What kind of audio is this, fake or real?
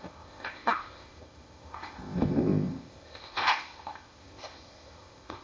fake